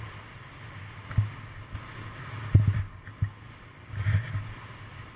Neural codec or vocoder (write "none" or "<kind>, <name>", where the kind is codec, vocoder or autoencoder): none